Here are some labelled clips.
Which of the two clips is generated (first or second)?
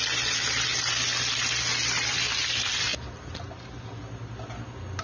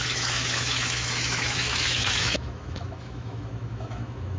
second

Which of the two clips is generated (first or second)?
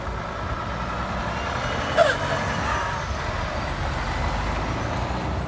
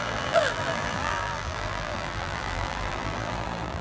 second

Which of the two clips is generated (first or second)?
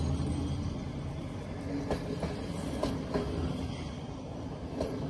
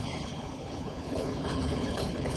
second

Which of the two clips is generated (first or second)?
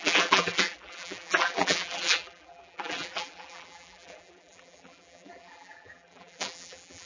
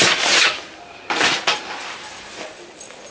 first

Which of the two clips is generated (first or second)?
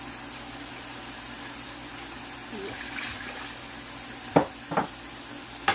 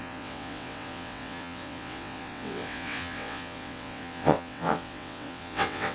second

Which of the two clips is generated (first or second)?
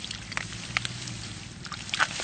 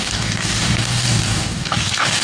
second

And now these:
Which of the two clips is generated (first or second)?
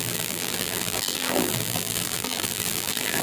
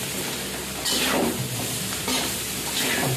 first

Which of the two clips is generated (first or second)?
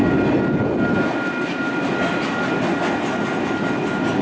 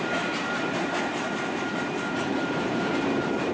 second